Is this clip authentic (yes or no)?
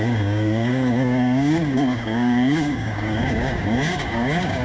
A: no